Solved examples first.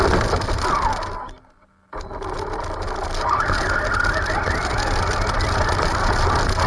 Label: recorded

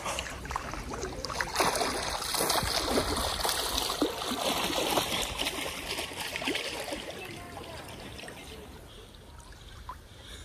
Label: remade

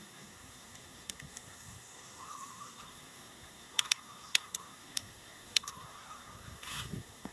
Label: remade